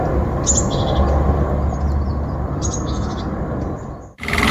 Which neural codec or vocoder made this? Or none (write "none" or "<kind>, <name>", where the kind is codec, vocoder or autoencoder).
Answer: none